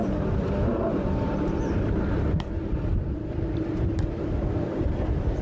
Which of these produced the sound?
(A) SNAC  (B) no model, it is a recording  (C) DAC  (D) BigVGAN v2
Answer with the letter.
D